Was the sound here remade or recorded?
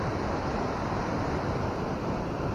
recorded